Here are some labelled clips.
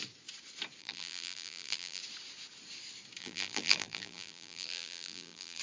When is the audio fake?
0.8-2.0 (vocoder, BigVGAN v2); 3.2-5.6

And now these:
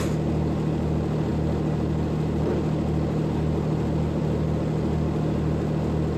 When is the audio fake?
none

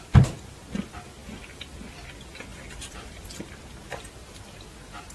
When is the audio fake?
2.5-3.4 (vocoder, BigVGAN v2)

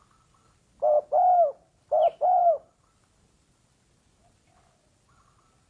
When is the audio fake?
2.1-2.7 (vocoder, BigVGAN v2)